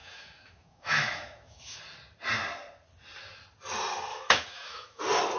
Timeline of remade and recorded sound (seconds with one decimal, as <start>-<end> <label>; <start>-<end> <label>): 0.0-1.8 remade; 1.8-4.1 recorded; 4.1-5.0 remade; 5.0-5.4 recorded